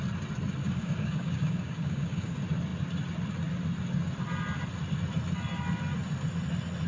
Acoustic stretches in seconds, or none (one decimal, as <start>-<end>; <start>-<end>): 0.0-0.6; 2.3-6.9